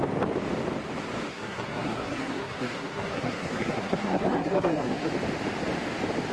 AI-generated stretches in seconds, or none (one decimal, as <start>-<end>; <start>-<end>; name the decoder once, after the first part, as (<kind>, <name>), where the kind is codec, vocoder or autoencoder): 1.3-5.1 (codec, SNAC)